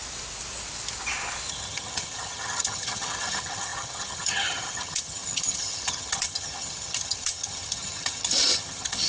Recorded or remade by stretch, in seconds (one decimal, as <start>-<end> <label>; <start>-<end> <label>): 0.0-1.5 recorded; 1.5-9.1 remade

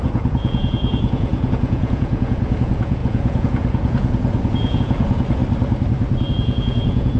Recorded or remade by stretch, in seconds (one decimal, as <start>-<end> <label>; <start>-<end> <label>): 0.0-5.4 remade; 5.4-6.3 recorded; 6.3-7.2 remade

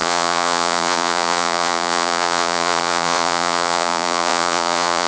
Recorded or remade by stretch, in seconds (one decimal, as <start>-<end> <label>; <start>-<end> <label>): 0.0-5.1 remade

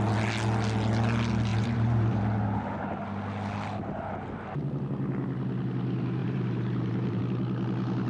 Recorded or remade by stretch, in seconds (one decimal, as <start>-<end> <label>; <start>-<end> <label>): 0.0-1.5 recorded; 1.5-2.2 remade; 2.2-6.2 recorded; 6.2-7.2 remade; 7.2-8.1 recorded

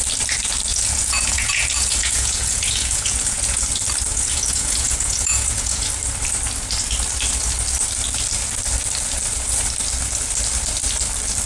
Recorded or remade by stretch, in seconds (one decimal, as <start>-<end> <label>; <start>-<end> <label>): 0.0-0.7 recorded; 0.7-3.6 remade; 3.6-4.1 recorded; 4.1-5.9 remade; 5.9-11.5 recorded

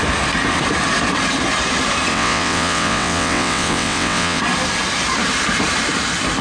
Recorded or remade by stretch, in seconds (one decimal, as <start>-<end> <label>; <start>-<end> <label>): 0.0-2.1 recorded; 2.1-4.4 remade; 4.4-6.4 recorded

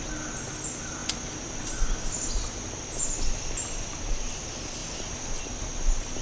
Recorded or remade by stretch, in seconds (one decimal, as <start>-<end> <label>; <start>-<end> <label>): 0.0-6.2 recorded